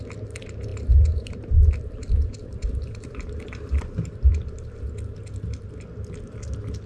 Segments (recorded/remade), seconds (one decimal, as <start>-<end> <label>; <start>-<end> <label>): 0.0-0.7 recorded; 0.7-4.8 remade; 4.8-6.9 recorded